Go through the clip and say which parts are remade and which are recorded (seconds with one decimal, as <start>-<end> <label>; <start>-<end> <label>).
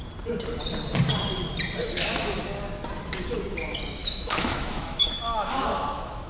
0.0-1.8 recorded; 1.8-2.4 remade; 2.4-4.0 recorded; 4.0-6.3 remade